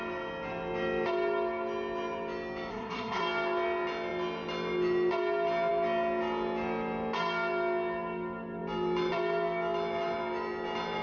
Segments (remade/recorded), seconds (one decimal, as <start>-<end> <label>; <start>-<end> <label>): 0.0-2.7 recorded; 2.7-3.2 remade; 3.2-11.0 recorded